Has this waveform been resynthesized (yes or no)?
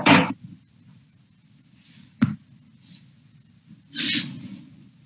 no